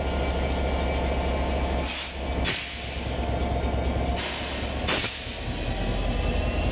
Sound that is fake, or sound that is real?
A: real